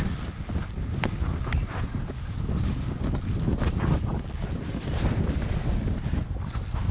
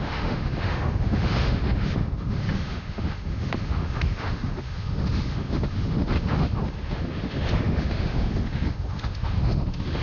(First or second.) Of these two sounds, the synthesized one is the second